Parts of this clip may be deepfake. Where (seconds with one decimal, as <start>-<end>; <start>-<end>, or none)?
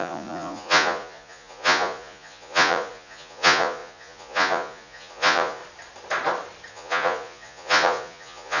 0.0-5.6; 6.7-8.6